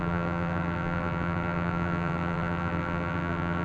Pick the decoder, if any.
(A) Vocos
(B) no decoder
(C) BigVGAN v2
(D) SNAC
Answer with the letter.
C